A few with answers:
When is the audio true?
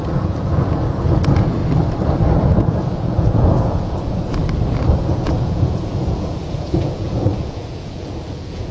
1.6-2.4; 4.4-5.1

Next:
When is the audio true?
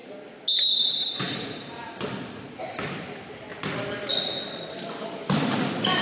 0.0-6.0